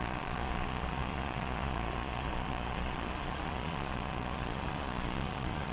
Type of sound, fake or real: fake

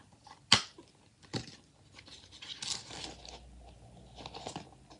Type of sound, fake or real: real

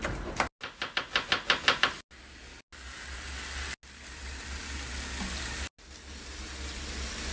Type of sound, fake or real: real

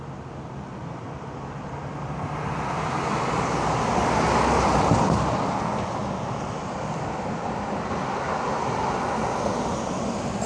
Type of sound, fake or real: real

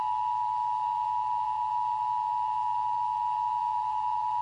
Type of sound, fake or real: fake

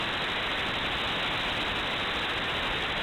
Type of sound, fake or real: real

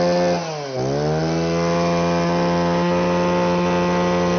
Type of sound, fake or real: real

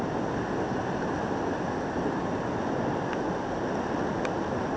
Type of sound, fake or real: real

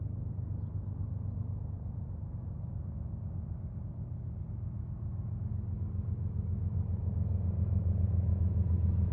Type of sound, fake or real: real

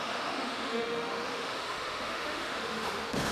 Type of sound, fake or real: fake